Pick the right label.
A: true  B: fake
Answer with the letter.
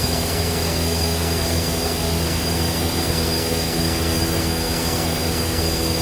B